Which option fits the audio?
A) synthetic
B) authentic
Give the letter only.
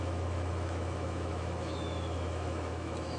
A